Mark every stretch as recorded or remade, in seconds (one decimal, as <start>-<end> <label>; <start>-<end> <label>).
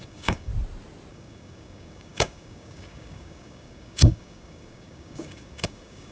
0.0-0.5 remade; 0.5-1.1 recorded; 1.1-6.1 remade